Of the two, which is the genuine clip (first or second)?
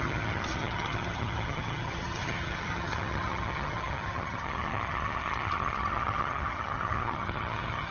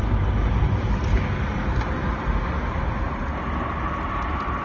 second